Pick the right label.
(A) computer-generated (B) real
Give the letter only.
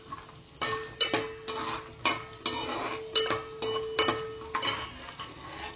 B